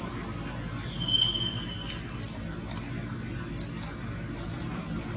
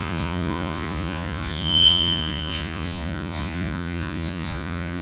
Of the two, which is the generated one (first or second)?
second